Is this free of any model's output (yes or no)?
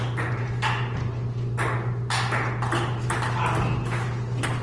yes